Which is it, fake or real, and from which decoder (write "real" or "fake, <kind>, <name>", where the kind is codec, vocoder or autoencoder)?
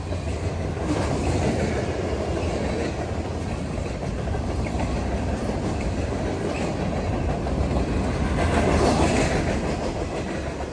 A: real